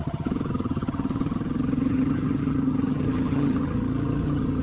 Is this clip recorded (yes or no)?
no